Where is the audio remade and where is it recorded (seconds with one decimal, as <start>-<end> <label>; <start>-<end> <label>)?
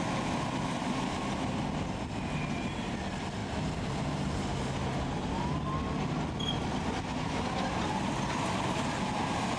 0.0-9.6 recorded